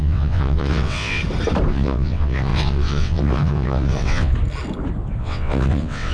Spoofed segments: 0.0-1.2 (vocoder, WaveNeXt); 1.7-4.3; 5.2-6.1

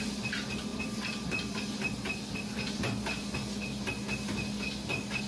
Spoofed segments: none

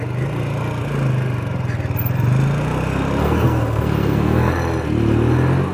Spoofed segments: 3.2-4.5 (codec, SNAC)

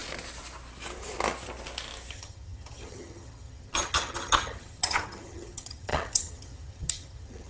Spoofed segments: 2.1-7.5 (vocoder, HiFi-GAN)